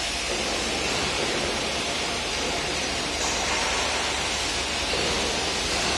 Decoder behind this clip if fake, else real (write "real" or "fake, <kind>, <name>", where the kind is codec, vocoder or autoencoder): real